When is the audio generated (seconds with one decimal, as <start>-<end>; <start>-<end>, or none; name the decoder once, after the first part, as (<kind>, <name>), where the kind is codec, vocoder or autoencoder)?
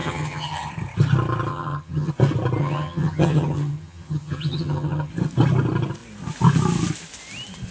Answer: 0.0-0.7 (vocoder, HiFi-GAN); 1.5-2.1; 2.6-5.1